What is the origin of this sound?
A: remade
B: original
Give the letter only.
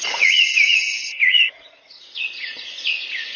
A